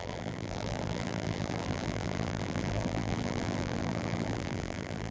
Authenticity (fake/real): fake